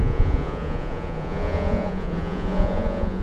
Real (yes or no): no